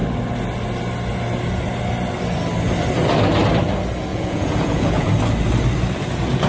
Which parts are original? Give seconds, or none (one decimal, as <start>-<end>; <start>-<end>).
0.0-4.1; 5.1-6.5